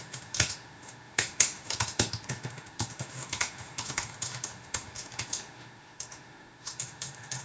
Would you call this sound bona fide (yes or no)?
no